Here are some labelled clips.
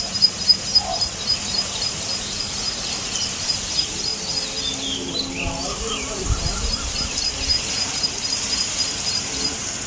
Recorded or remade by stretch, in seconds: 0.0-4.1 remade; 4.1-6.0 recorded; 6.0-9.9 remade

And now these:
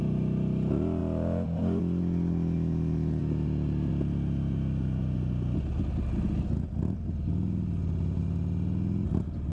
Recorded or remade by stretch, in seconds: 0.0-3.2 recorded; 3.2-3.9 remade; 3.9-9.5 recorded

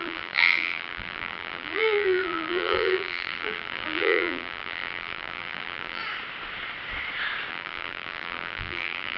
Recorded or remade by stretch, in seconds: 0.0-6.0 remade; 6.0-7.5 recorded; 7.5-9.2 remade

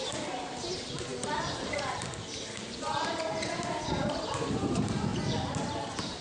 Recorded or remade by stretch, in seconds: 0.0-5.1 remade; 5.1-6.2 recorded

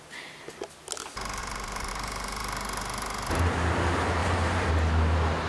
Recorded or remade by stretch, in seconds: 0.0-1.4 recorded; 1.4-1.9 remade; 1.9-4.2 recorded; 4.2-4.7 remade; 4.7-5.5 recorded

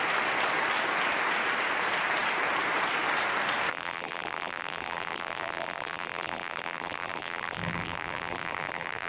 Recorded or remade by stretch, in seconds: 0.0-3.7 recorded; 3.7-9.1 remade

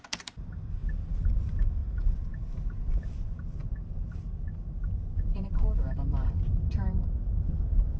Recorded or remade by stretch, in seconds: 0.0-0.8 remade; 0.8-1.4 recorded; 1.4-8.0 remade

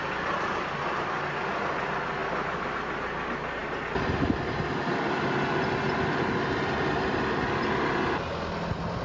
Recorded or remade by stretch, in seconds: 0.0-9.0 recorded